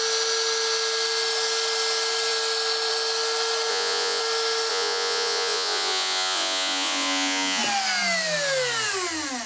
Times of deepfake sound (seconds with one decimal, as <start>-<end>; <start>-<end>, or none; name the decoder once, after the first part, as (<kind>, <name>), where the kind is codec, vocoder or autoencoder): 3.7-4.2 (vocoder, Vocos); 4.7-7.6